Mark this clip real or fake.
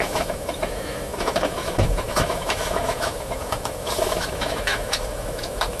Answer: fake